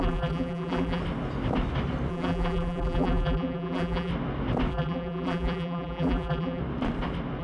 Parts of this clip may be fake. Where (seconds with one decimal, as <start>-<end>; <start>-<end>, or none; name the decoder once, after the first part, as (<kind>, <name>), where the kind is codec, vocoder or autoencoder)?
0.0-1.0 (vocoder, BigVGAN v2); 2.1-4.1; 4.7-6.6